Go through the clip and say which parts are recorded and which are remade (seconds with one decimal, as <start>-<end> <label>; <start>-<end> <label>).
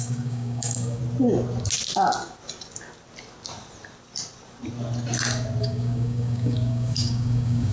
0.0-1.0 remade; 1.0-5.6 recorded; 5.6-7.7 remade